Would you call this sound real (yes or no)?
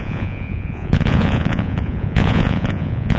no